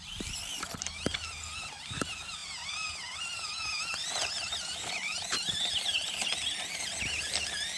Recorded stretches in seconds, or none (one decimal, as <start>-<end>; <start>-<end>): 0.0-7.8